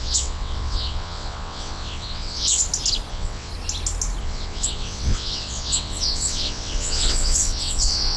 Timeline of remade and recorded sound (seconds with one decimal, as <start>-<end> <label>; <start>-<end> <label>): 0.0-2.6 remade; 2.6-3.1 recorded; 3.1-3.5 remade; 3.5-4.2 recorded; 4.2-8.2 remade